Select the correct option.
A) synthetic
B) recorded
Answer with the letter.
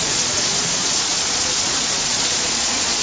A